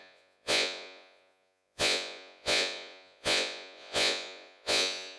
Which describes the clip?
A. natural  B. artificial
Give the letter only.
B